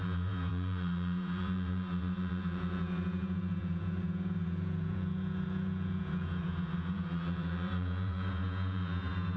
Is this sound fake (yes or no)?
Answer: yes